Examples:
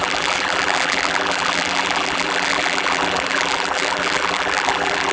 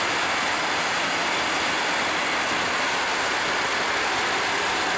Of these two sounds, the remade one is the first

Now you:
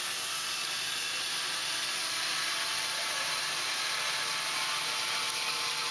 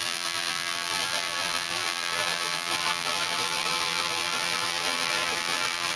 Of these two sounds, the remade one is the second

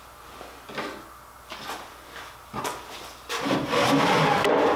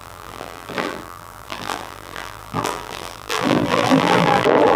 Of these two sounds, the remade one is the second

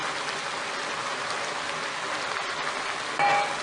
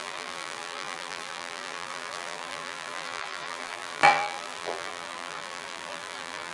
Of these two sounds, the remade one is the second